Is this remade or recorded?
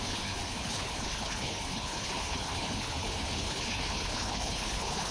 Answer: remade